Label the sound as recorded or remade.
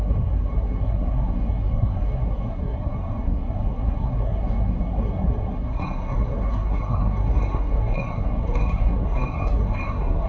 remade